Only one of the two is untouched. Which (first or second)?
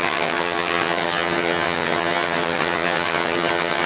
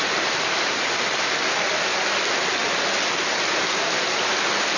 second